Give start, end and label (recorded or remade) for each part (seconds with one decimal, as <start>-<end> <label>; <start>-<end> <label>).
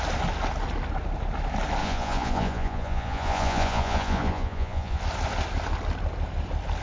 0.0-1.8 recorded; 1.8-5.0 remade; 5.0-6.8 recorded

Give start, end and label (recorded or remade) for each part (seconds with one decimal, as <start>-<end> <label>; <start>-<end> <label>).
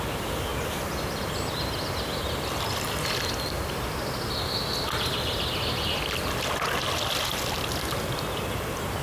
0.0-9.0 recorded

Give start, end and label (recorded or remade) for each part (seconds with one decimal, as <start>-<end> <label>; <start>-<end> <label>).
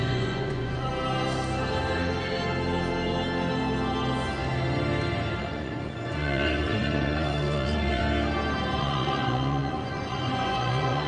0.0-0.9 remade; 0.9-5.4 recorded; 5.4-8.0 remade; 8.0-8.8 recorded; 8.8-11.1 remade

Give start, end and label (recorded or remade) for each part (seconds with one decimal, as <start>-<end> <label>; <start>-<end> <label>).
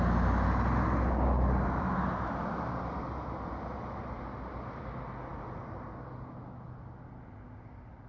0.0-8.1 recorded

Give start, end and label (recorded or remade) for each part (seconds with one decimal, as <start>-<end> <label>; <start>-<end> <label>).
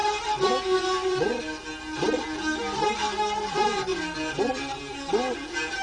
0.0-5.8 recorded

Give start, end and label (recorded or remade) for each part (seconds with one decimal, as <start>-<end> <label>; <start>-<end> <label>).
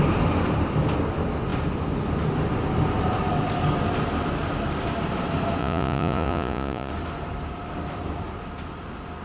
0.0-5.6 recorded; 5.6-6.9 remade; 6.9-9.2 recorded